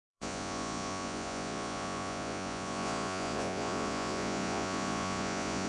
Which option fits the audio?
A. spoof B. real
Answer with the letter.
A